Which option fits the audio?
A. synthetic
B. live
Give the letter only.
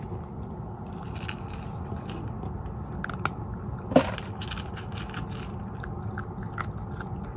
B